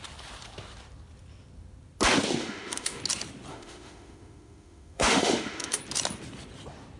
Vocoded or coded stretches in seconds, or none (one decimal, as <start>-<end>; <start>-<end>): 2.4-3.0; 3.5-5.8